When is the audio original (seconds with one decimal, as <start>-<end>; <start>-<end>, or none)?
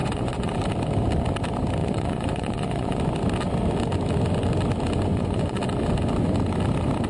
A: 0.5-1.8; 3.0-5.1; 5.6-7.1